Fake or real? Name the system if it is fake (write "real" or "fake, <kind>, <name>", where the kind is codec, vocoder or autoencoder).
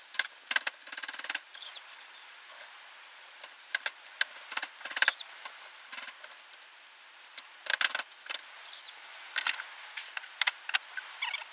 real